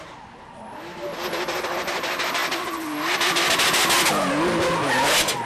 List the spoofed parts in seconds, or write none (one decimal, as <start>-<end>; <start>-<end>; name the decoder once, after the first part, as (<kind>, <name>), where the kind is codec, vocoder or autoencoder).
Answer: none